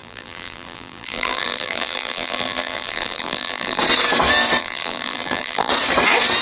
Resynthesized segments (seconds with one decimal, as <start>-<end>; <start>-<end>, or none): 0.0-3.8; 4.6-5.7